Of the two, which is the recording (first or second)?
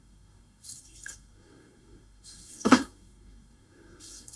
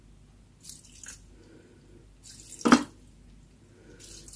second